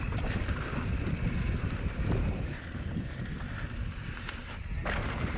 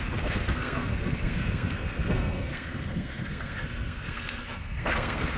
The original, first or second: first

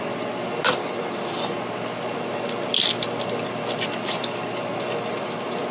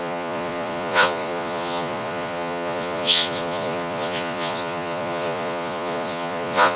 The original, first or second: first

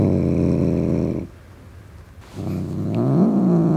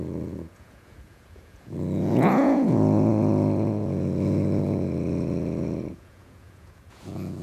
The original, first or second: first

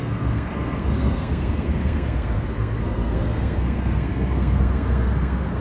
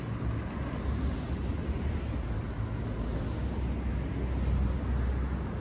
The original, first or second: second